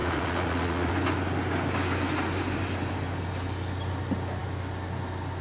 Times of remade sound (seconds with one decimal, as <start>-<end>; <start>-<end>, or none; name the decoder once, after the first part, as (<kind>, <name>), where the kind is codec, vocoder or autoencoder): 0.0-0.9 (vocoder, Vocos)